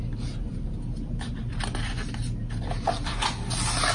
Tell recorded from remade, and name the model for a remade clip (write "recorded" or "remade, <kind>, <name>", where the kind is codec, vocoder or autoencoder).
recorded